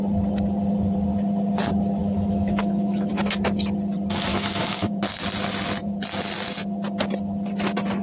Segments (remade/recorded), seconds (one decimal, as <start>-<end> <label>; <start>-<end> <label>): 0.0-2.0 recorded; 2.0-3.1 remade; 3.1-4.3 recorded; 4.3-4.9 remade; 4.9-8.0 recorded